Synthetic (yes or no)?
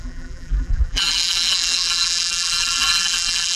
yes